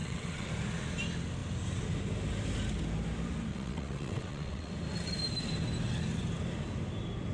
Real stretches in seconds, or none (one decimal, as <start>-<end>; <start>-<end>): 0.5-3.5; 4.7-7.3